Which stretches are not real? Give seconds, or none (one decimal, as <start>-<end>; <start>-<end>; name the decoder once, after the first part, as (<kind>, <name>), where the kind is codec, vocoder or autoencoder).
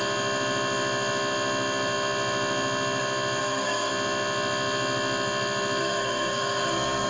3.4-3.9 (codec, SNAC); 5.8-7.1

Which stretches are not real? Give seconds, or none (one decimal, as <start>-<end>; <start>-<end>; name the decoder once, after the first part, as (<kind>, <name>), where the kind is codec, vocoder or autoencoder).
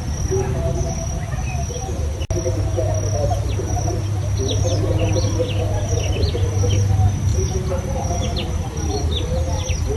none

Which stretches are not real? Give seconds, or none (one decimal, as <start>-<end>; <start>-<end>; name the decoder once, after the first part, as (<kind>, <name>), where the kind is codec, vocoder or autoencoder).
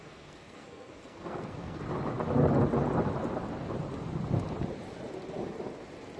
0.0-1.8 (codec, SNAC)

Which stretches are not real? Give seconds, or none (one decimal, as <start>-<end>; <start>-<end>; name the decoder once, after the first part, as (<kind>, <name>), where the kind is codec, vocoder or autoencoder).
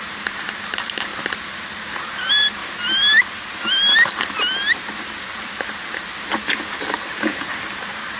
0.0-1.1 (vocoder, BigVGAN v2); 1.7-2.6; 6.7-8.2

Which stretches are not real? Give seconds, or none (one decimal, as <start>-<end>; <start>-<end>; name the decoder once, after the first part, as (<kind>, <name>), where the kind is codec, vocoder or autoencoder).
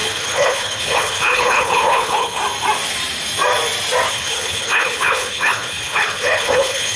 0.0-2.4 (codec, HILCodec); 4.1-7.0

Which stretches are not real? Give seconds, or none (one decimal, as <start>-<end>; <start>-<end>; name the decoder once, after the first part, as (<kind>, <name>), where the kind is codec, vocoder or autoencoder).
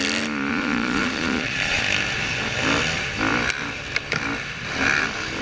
0.5-1.8 (vocoder, Vocos)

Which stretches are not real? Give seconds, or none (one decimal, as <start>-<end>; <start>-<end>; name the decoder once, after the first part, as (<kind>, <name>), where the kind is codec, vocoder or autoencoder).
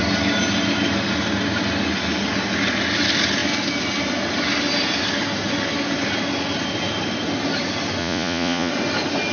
8.0-8.7 (vocoder, Vocos)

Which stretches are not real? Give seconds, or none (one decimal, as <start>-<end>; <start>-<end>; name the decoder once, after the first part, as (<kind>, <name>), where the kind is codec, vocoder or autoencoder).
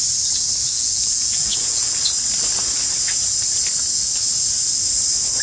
0.6-2.0 (vocoder, Vocos)